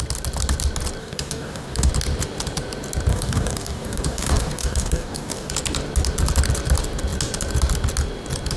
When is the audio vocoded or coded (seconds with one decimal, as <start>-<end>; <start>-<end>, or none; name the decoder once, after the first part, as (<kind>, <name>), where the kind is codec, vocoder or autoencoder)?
1.0-1.9 (codec, DAC); 3.1-5.5